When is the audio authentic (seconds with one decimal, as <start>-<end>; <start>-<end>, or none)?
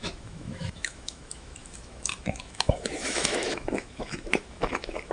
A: none